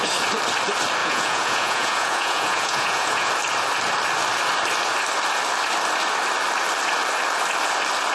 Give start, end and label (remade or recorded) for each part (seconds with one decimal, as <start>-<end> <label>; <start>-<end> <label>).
0.0-1.0 recorded; 1.0-3.3 remade; 3.3-8.1 recorded